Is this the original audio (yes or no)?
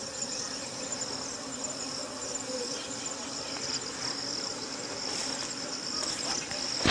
no